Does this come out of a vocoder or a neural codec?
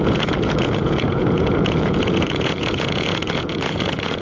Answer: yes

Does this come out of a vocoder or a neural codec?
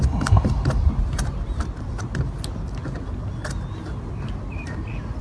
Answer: no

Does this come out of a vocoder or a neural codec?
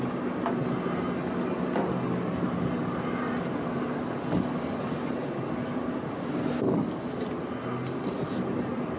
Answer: no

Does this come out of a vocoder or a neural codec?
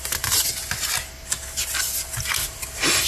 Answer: no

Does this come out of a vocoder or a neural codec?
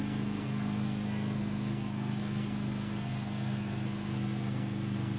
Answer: yes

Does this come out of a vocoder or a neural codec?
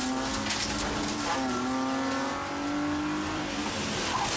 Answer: no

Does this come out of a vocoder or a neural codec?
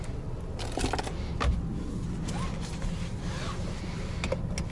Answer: no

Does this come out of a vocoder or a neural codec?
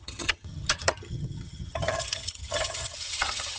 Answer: yes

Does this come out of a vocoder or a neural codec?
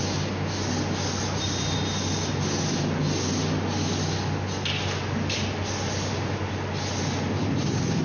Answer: no